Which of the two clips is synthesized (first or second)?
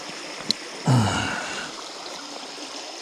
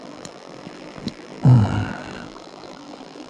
second